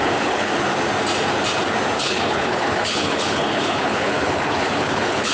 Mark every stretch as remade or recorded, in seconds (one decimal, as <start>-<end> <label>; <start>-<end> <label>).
0.0-0.5 remade; 0.5-2.0 recorded; 2.0-5.3 remade